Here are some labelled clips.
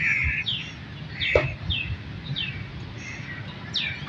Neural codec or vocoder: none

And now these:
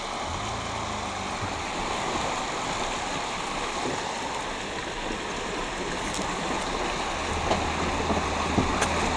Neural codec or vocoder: none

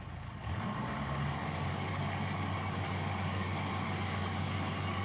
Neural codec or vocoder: codec, DAC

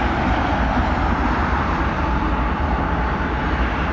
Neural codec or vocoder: none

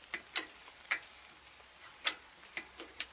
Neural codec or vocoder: none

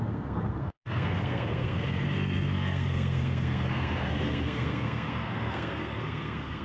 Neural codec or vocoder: codec, SNAC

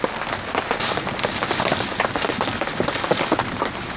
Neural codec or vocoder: none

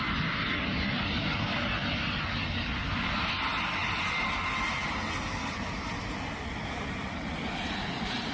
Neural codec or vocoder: none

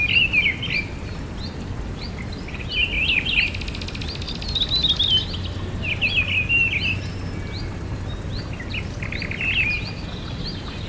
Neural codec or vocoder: none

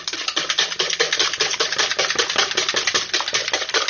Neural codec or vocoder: none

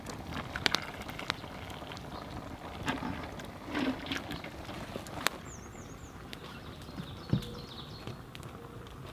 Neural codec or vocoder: none